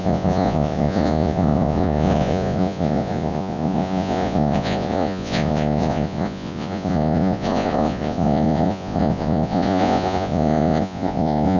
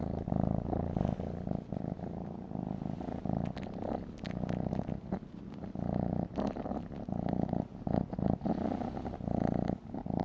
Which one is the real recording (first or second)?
second